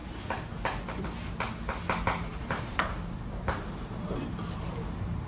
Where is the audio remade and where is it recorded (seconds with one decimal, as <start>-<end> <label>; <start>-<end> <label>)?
0.0-0.6 remade; 0.6-2.3 recorded; 2.3-5.3 remade